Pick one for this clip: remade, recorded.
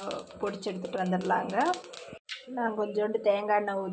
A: recorded